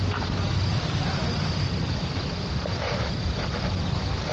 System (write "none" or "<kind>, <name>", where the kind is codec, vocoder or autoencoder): none